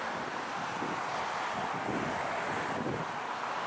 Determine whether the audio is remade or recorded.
recorded